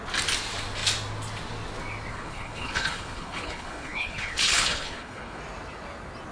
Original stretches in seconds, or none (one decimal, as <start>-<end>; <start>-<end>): 0.0-2.1; 5.4-6.3